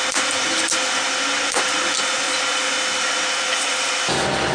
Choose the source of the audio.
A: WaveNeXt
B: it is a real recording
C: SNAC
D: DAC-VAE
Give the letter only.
B